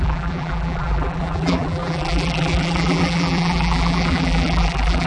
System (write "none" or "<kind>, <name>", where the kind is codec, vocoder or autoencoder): vocoder, BigVGAN v2